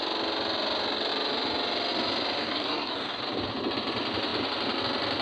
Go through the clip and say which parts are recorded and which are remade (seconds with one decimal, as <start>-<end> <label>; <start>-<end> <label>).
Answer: 0.0-2.4 recorded; 2.4-3.2 remade; 3.2-5.2 recorded